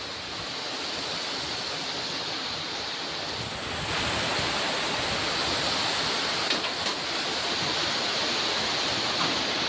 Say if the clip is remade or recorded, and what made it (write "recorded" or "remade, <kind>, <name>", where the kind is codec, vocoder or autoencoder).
recorded